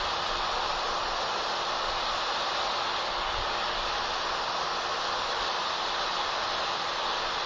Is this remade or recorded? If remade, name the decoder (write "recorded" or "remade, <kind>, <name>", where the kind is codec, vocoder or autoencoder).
recorded